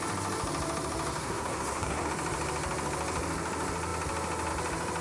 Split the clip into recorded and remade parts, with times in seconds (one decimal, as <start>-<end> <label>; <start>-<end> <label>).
0.0-1.1 recorded; 1.1-2.1 remade; 2.1-5.0 recorded